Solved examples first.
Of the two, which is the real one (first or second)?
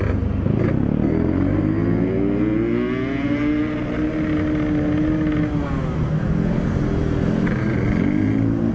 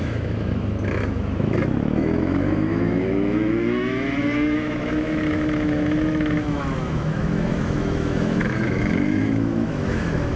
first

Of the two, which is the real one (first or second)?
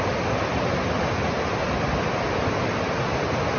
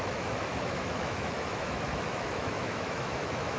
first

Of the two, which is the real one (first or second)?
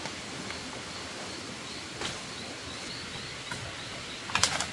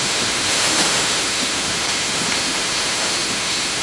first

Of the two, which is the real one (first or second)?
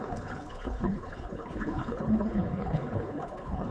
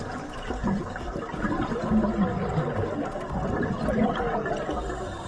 second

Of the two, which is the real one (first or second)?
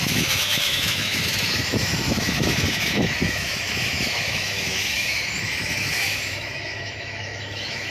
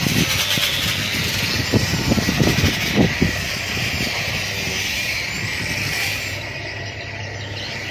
second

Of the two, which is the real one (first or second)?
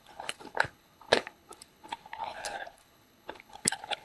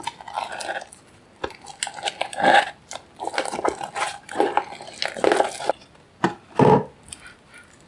second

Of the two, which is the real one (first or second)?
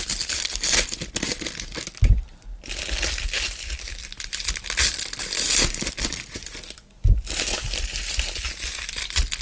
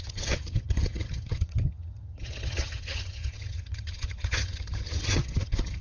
first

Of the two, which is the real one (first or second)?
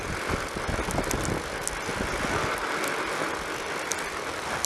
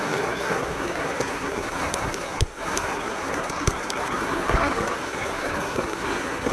first